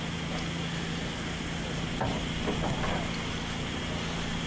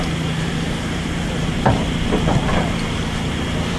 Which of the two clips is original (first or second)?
first